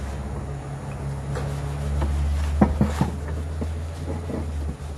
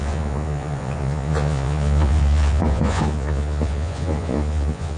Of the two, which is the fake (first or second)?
second